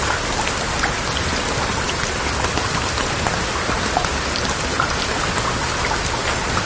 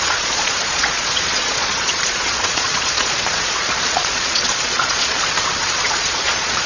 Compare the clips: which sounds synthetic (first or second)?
second